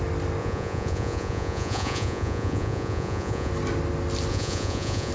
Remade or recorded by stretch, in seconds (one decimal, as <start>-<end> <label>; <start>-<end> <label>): 0.0-0.4 recorded; 0.4-3.5 remade; 3.5-4.3 recorded; 4.3-5.1 remade